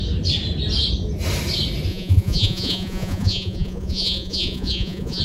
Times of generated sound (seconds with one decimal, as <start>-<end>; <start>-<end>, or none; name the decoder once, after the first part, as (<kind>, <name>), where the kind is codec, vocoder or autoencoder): 1.9-5.2 (vocoder, Vocos)

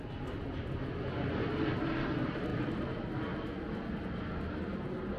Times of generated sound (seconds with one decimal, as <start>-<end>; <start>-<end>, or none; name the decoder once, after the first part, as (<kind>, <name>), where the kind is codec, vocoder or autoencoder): 2.5-3.1 (vocoder, BigVGAN v2)

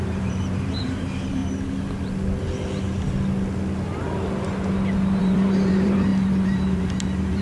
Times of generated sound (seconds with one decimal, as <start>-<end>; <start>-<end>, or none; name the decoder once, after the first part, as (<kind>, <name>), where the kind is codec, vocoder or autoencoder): 0.0-1.4 (vocoder, BigVGAN v2); 5.2-7.4

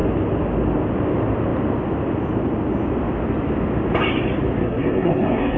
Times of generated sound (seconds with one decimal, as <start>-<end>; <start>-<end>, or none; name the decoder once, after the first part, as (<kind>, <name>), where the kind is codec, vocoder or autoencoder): 4.6-5.6 (codec, SNAC)

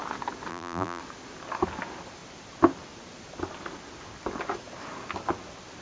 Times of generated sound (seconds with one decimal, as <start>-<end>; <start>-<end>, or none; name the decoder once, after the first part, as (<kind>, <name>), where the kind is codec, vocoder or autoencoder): 0.5-1.0 (vocoder, BigVGAN v2)

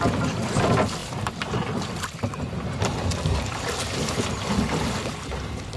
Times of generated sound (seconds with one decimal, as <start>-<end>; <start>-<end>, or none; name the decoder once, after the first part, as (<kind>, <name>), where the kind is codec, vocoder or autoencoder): 1.0-3.0 (vocoder, BigVGAN v2)

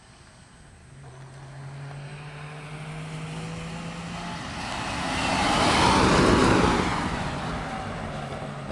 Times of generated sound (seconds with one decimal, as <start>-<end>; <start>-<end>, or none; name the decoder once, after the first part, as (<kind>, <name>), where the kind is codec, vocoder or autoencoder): 6.9-7.5 (vocoder, Vocos)

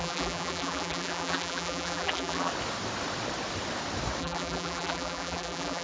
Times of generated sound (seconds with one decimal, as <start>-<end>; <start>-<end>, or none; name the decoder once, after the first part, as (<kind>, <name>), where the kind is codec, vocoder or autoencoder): 0.0-2.5 (vocoder, BigVGAN v2); 4.2-5.8